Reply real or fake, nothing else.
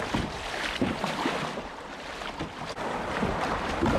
real